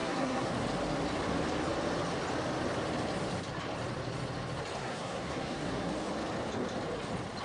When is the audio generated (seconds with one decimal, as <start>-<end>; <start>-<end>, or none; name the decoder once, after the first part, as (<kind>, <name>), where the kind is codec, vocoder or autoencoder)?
0.0-0.5 (codec, SNAC); 4.8-5.9